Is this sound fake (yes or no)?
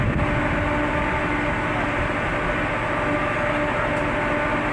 no